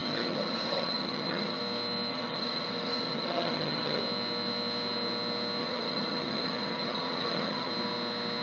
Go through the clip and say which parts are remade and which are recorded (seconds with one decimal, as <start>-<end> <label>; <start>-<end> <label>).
0.0-1.6 remade; 1.6-2.1 recorded; 2.1-4.0 remade; 4.0-5.6 recorded; 5.6-7.7 remade; 7.7-8.4 recorded